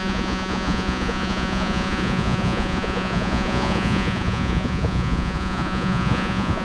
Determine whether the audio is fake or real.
fake